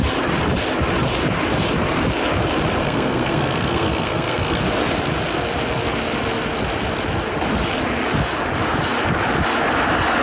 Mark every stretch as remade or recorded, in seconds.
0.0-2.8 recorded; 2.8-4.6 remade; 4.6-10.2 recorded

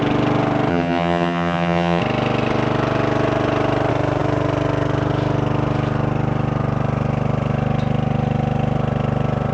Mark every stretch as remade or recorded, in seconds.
0.0-0.7 recorded; 0.7-2.0 remade; 2.0-9.5 recorded

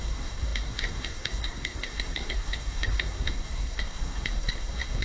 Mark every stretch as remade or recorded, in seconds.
0.0-5.0 remade

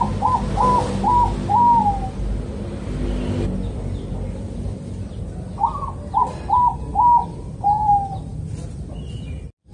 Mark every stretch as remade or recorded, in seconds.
0.0-9.7 recorded

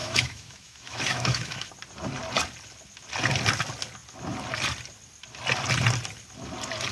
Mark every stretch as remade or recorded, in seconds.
0.0-1.7 remade; 1.7-6.9 recorded

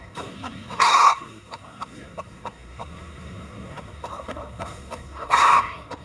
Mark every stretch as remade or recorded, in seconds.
0.0-6.0 remade